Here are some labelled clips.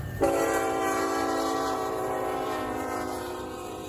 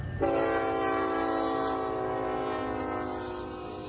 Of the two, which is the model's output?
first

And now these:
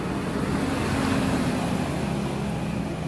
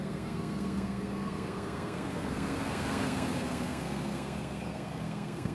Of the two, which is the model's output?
second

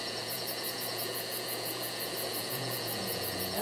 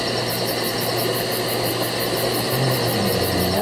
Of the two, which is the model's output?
first